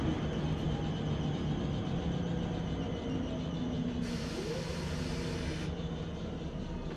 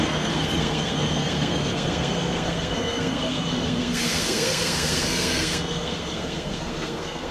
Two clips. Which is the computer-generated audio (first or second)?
second